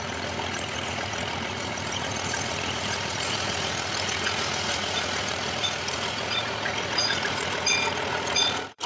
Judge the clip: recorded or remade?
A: remade